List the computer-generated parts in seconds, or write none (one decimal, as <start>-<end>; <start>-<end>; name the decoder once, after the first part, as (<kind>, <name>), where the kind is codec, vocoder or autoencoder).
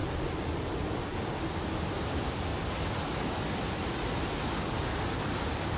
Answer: 0.0-1.1 (vocoder, BigVGAN v2); 2.1-2.5; 5.1-5.8